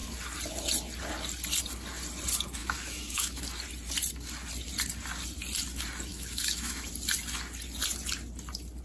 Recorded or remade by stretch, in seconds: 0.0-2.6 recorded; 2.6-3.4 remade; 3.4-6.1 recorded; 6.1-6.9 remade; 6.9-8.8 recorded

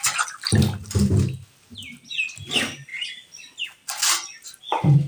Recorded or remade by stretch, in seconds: 0.0-5.1 recorded